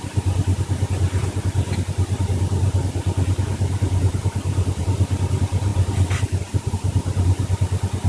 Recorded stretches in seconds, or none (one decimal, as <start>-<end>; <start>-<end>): none